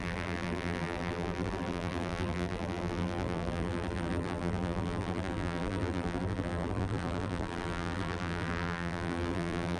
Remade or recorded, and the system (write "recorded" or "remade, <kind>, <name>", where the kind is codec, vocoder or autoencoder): remade, vocoder, BigVGAN v2